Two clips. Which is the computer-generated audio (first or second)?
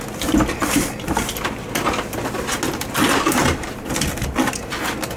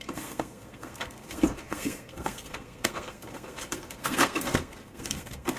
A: second